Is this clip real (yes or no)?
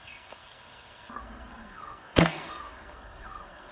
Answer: no